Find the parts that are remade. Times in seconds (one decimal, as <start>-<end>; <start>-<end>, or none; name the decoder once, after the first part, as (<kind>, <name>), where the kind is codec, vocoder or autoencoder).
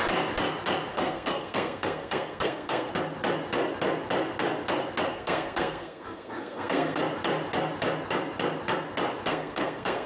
0.9-2.9 (codec, SNAC); 5.1-7.0; 9.3-10.1